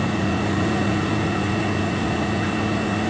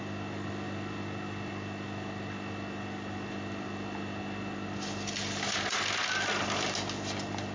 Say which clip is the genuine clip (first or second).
second